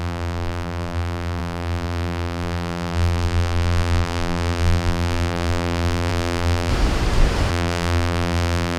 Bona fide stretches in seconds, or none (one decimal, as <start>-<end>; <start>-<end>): 6.7-7.5